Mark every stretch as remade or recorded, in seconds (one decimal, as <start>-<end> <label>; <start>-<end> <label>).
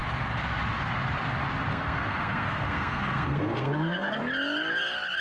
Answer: 0.0-1.7 recorded; 1.7-4.2 remade; 4.2-5.2 recorded